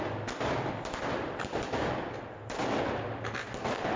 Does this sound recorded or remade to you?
recorded